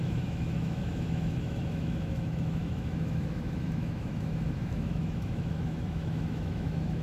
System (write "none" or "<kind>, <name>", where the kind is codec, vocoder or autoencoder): autoencoder, DAC-VAE